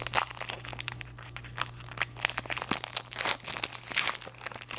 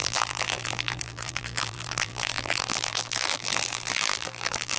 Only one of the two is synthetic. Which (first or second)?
second